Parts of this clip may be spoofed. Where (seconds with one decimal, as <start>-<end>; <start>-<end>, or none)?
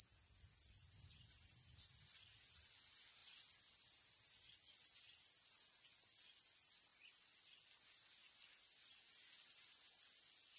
none